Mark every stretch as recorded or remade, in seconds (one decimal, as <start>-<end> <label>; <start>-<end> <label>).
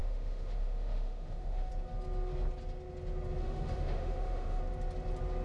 0.0-1.7 remade; 1.7-3.4 recorded; 3.4-4.6 remade; 4.6-5.4 recorded